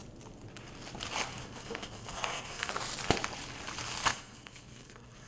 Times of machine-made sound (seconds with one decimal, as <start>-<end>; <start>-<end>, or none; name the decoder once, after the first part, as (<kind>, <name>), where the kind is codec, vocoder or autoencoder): 1.3-2.7 (codec, SNAC); 4.1-5.3